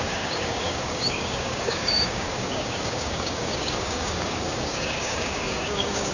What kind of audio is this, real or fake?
fake